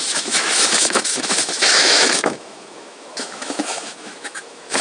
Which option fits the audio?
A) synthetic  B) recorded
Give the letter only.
A